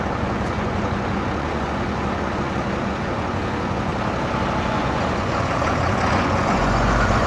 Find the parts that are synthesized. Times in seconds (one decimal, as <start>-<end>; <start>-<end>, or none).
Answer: 0.0-3.9; 4.6-7.3